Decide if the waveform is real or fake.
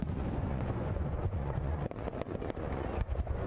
fake